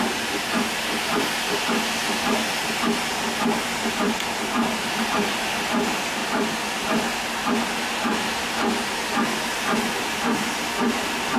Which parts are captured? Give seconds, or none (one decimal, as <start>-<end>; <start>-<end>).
0.0-6.2; 9.6-11.4